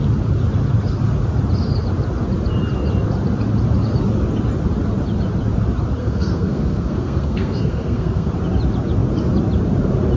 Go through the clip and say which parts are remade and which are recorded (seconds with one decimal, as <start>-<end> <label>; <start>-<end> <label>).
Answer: 0.0-6.0 recorded; 6.0-8.3 remade; 8.3-10.2 recorded